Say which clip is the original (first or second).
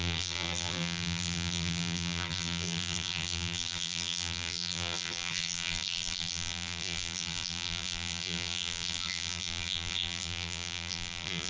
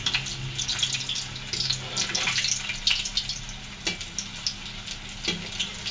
second